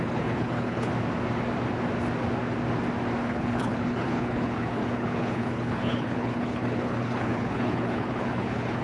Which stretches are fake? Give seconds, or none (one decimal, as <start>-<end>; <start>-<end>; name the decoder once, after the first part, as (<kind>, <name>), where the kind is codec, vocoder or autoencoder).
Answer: 0.0-0.9 (codec, HILCodec); 3.2-8.8